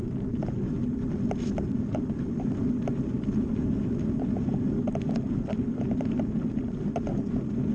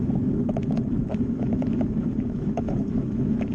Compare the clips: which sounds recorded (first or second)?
first